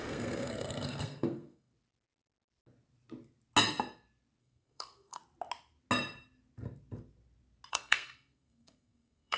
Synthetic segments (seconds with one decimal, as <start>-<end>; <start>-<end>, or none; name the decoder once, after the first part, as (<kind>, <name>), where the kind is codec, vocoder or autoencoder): 0.0-1.7 (codec, SNAC); 4.4-5.2; 7.7-9.4

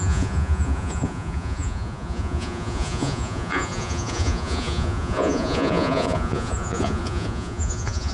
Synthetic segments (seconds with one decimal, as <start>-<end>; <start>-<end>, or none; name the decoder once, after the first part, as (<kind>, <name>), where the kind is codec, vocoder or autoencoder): 0.0-8.1 (vocoder, Vocos)

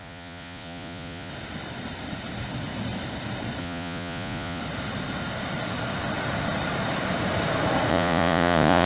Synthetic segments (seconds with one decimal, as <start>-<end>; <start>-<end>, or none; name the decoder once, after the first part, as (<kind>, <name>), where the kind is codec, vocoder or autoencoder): 0.0-1.3 (vocoder, Vocos); 3.6-4.6; 7.9-8.9

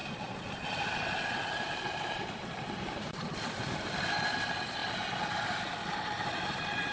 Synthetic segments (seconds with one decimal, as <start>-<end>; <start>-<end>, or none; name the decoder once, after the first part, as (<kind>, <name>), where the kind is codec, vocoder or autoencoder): 1.9-4.8 (vocoder, BigVGAN v2); 5.4-6.9

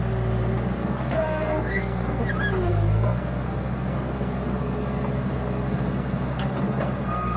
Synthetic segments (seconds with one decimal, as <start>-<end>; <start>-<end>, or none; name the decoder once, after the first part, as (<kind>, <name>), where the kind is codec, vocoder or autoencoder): 0.8-2.2 (codec, SNAC); 2.7-7.4

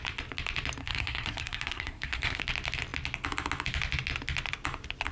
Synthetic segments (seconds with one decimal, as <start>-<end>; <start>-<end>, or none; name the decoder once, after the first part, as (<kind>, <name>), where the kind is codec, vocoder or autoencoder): 0.8-2.4 (codec, SNAC)

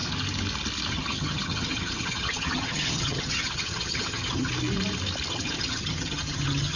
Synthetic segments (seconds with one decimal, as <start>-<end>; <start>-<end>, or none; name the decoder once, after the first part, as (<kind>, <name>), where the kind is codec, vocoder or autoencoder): 0.9-4.5 (vocoder, HiFi-GAN); 5.3-6.8

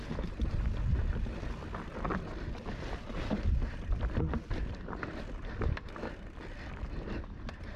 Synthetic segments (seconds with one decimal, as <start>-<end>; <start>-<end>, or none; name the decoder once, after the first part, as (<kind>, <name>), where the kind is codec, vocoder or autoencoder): 1.9-6.5 (vocoder, BigVGAN v2)